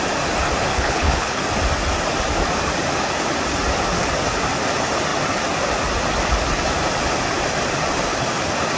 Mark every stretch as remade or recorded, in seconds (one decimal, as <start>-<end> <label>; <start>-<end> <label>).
0.0-0.7 recorded; 0.7-1.4 remade; 1.4-8.8 recorded